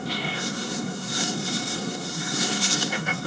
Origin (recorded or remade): remade